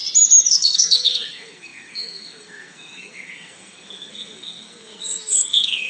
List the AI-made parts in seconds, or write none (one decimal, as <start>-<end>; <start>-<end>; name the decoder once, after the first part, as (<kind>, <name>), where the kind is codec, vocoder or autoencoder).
0.5-5.9 (codec, SNAC)